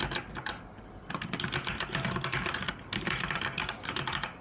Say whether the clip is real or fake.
real